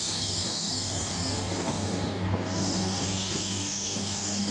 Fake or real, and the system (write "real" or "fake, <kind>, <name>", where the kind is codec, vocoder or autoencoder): fake, codec, DAC